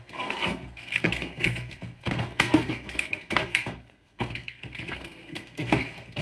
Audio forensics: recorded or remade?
remade